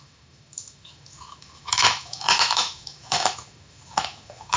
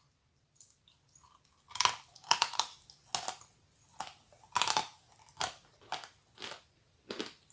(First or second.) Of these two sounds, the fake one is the first